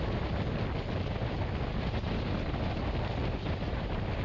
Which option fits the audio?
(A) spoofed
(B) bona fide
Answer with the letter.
B